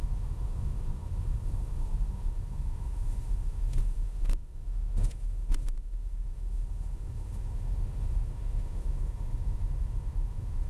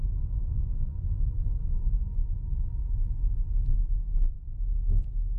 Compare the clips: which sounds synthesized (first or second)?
first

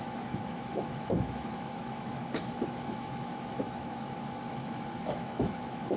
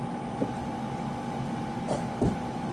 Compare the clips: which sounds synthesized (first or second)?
first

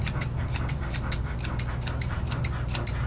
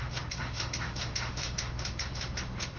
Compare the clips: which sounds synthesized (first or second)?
second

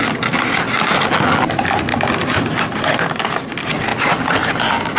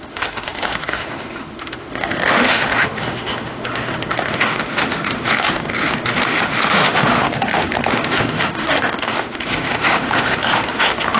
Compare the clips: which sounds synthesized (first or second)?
second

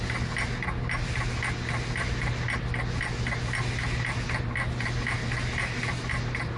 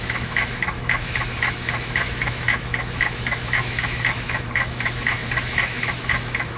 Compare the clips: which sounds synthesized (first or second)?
second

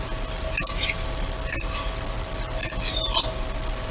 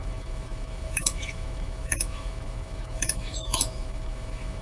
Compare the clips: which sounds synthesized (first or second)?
second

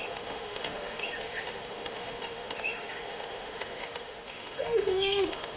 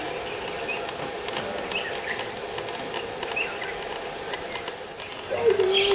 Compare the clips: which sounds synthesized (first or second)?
first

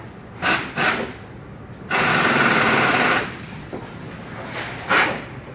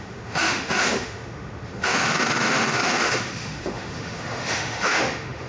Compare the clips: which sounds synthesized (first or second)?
second